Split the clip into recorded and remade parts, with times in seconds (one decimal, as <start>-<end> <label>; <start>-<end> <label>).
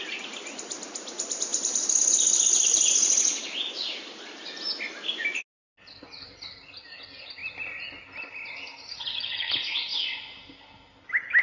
0.0-8.9 recorded; 8.9-9.5 remade; 9.5-11.4 recorded